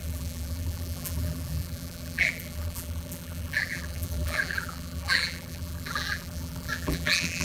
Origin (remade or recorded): remade